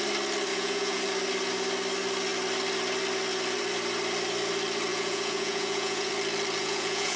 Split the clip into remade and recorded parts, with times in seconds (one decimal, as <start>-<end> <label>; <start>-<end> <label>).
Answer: 0.0-0.5 recorded; 0.5-1.0 remade; 1.0-4.9 recorded; 4.9-6.1 remade; 6.1-6.6 recorded; 6.6-7.2 remade